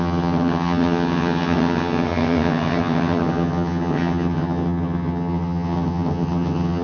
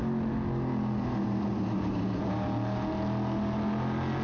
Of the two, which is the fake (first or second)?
first